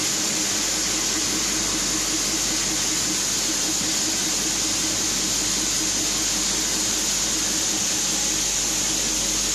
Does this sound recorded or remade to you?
recorded